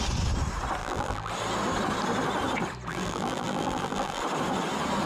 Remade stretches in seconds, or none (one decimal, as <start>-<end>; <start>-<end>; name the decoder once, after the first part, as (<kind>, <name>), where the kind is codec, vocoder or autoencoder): 0.8-1.3 (vocoder, BigVGAN v2); 2.9-4.2